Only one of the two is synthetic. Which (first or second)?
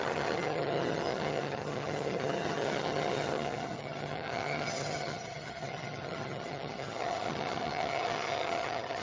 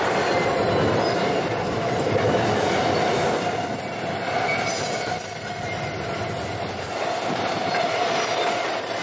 first